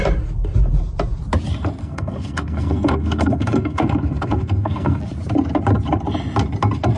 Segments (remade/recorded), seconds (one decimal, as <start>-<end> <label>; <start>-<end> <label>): 0.0-1.8 recorded; 1.8-5.0 remade; 5.0-7.0 recorded